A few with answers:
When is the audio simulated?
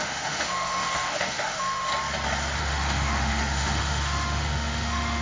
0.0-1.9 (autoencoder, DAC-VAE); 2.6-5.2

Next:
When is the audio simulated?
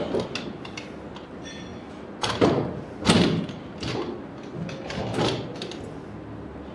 none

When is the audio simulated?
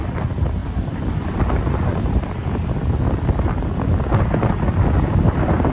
none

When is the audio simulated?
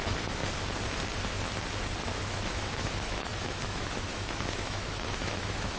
0.0-0.4 (autoencoder, DAC-VAE); 2.1-5.8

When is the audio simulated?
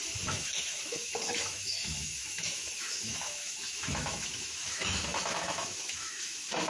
0.0-6.7 (autoencoder, DAC-VAE)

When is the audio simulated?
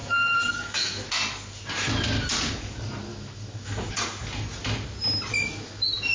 0.0-1.1 (autoencoder, DAC-VAE); 3.1-3.9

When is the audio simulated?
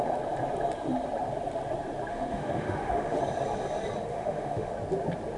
2.1-3.2 (autoencoder, DAC-VAE); 4.1-4.7